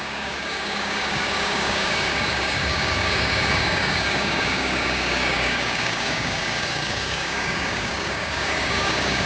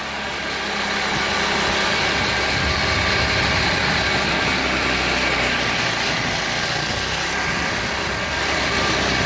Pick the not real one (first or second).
first